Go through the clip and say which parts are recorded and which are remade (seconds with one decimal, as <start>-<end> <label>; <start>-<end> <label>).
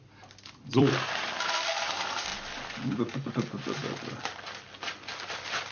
0.0-3.8 remade; 3.8-5.2 recorded; 5.2-5.7 remade